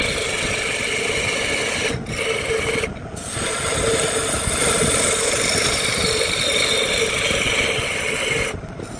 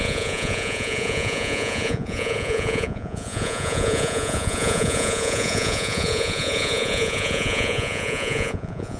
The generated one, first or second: second